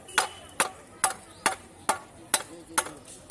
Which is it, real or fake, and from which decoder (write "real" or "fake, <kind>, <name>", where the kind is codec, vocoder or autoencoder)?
real